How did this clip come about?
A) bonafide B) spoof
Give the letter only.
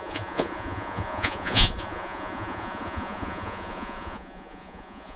B